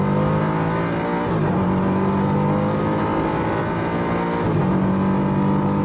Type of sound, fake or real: real